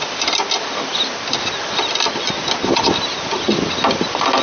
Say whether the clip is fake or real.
real